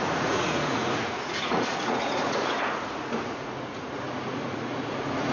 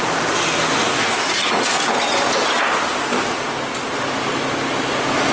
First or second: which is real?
second